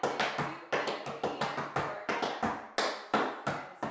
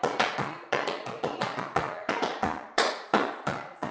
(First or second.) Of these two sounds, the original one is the first